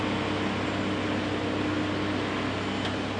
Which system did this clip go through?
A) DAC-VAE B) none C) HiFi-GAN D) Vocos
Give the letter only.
B